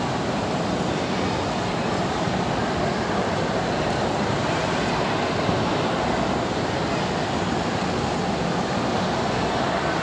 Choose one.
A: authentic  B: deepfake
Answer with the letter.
A